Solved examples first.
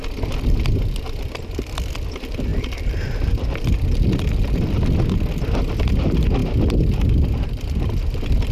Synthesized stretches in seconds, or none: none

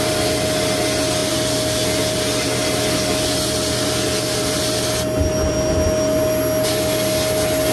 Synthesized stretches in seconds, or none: none

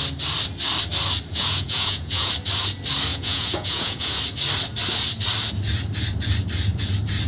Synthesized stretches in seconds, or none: 1.3-2.3; 3.1-4.2

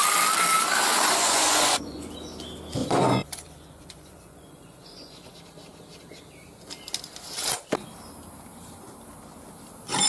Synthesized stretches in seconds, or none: 0.9-2.1; 2.8-5.3

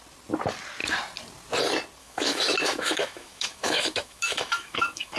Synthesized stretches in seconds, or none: 2.0-5.2

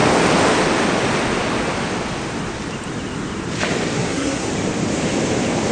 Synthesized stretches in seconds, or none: 4.0-4.5

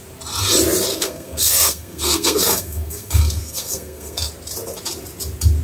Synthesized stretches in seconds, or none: 0.9-4.3